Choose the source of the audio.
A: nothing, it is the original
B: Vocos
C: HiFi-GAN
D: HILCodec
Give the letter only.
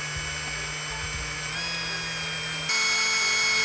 A